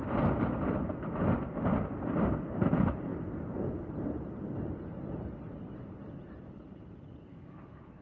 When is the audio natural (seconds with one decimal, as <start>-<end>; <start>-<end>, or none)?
0.0-7.3